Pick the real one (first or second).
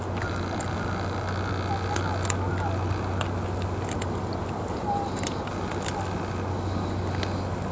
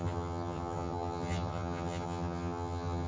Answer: first